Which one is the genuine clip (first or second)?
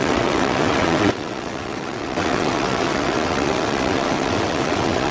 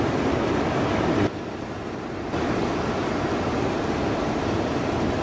second